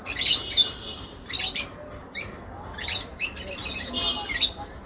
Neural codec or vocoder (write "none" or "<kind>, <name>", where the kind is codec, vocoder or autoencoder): vocoder, BigVGAN v2